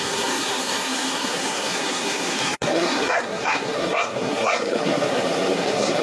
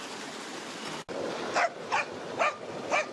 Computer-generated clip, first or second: first